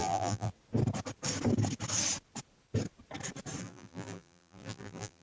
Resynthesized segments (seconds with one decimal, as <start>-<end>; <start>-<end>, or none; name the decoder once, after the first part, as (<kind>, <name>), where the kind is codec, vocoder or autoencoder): 0.0-0.5 (vocoder, BigVGAN v2); 3.6-5.2